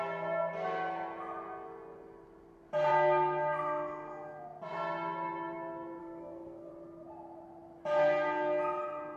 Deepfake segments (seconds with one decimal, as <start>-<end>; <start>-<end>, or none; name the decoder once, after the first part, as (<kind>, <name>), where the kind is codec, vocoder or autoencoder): 6.0-6.7 (codec, SNAC)

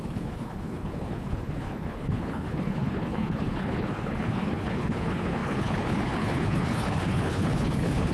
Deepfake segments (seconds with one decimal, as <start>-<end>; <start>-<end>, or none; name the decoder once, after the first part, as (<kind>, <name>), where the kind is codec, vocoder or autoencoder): 0.0-8.1 (codec, HILCodec)

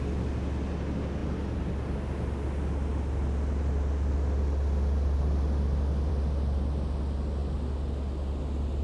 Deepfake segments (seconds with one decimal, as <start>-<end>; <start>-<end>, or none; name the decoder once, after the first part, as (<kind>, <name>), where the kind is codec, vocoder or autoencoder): none

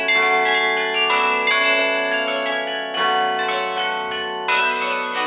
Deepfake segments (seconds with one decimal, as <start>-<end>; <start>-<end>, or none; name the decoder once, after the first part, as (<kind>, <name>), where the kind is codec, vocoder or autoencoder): 4.6-5.3 (codec, DAC)

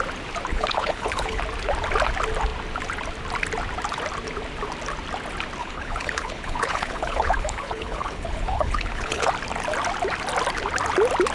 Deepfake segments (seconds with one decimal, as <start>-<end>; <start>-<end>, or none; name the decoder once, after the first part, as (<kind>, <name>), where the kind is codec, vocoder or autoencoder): 0.5-1.4 (codec, HILCodec); 5.6-9.3

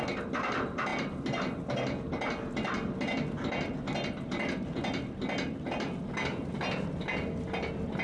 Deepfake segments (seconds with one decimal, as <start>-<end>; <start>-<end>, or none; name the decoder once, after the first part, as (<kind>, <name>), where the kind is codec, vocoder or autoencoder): none

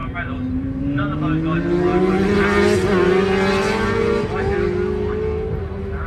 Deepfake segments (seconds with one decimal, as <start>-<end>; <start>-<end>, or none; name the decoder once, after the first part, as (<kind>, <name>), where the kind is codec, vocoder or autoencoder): none

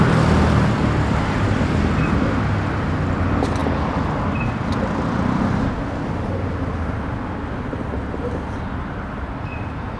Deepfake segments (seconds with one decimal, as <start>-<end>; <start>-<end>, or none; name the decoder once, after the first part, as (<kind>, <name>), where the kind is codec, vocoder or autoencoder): none